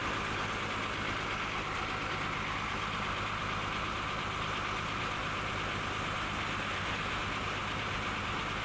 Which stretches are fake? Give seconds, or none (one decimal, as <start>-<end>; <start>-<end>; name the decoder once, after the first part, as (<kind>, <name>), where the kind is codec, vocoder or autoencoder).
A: 0.0-0.5 (vocoder, BigVGAN v2)

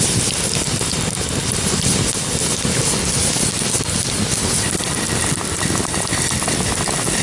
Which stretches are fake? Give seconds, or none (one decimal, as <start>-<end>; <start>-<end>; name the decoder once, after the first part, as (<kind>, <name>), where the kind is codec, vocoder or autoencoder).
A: 5.1-5.9 (vocoder, BigVGAN v2)

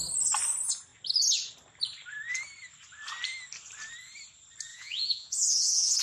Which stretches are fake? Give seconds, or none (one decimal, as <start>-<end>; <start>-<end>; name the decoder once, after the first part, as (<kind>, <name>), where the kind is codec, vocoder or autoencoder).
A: 4.7-6.0 (vocoder, Vocos)

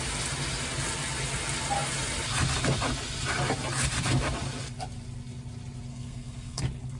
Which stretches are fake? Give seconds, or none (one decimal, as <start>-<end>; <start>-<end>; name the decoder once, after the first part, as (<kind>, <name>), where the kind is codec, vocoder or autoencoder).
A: 5.9-6.6 (codec, SNAC)

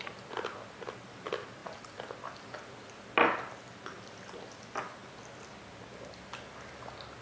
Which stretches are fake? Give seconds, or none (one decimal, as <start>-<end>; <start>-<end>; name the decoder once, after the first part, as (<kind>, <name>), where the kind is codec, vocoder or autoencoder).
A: none

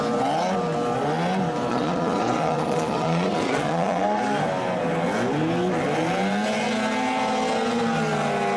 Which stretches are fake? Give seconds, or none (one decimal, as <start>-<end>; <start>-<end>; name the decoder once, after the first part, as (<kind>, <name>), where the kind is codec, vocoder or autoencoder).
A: 1.7-4.2 (vocoder, Vocos)

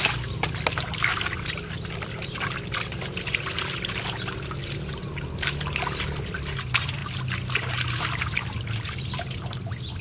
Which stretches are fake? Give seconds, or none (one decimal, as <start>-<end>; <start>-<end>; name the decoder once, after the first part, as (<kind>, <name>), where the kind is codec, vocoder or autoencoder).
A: none

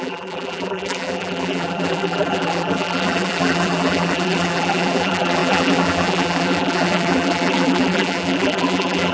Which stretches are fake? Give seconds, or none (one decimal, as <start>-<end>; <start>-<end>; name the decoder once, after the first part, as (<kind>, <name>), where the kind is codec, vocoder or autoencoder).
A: 0.0-9.1 (vocoder, BigVGAN v2)